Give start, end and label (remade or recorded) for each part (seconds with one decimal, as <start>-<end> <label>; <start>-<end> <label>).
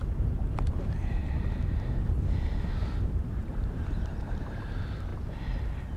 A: 0.0-1.2 remade; 1.2-2.8 recorded; 2.8-5.1 remade; 5.1-6.0 recorded